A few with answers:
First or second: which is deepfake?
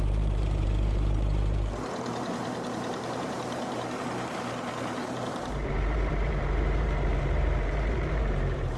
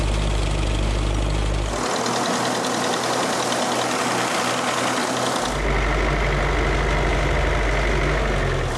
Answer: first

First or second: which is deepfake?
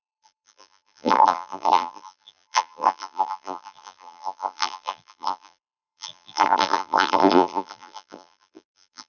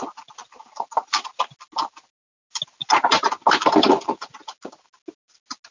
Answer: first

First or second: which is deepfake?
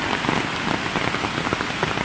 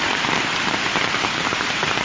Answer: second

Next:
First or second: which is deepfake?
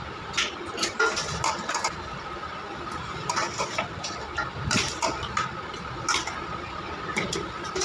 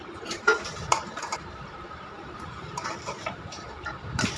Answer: second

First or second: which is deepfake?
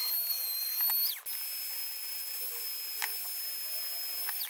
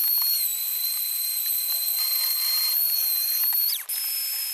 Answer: second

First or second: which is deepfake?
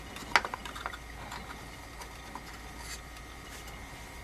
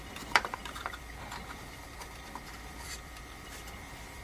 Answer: second